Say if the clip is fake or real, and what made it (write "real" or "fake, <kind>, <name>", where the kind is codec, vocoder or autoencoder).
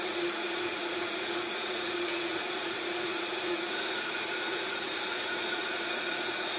fake, vocoder, Vocos